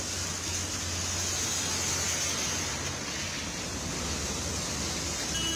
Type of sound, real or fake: real